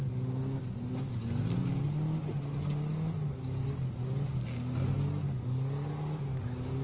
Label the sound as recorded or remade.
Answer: recorded